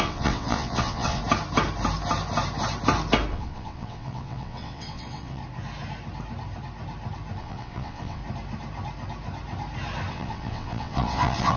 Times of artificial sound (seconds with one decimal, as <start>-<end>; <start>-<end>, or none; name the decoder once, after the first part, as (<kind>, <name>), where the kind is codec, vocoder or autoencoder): 0.0-1.2 (vocoder, WaveNeXt); 3.3-5.4; 7.4-8.2; 10.1-11.6